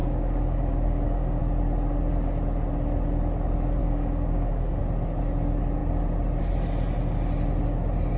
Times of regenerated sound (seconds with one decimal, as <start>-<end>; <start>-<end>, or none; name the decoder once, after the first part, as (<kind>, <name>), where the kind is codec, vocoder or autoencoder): 0.0-1.4 (codec, DAC); 3.8-4.8